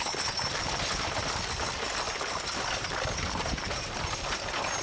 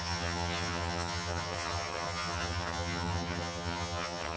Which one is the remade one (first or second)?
second